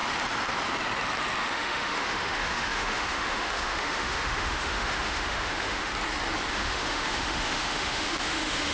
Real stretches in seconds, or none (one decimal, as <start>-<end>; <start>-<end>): 0.0-1.4; 5.9-6.5